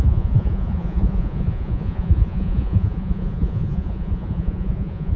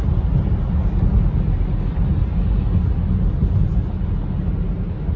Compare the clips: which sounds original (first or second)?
second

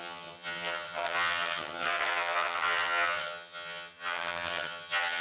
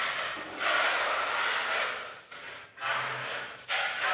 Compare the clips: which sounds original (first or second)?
second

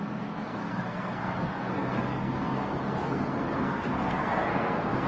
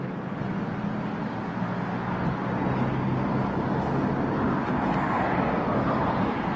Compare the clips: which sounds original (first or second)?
second